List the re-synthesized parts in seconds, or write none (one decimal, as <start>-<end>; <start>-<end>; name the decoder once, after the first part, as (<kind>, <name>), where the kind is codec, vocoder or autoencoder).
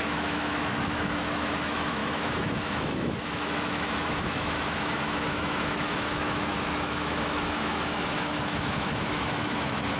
0.0-10.0 (autoencoder, DAC-VAE)